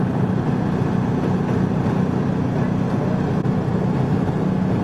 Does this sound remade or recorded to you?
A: recorded